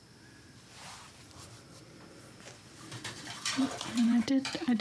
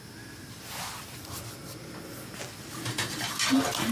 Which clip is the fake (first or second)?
first